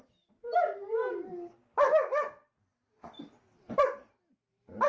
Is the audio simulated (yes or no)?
no